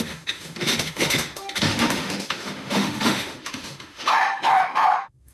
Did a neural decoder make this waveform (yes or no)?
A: yes